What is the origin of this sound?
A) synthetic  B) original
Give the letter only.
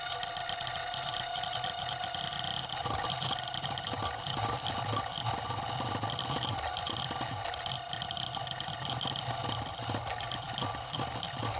B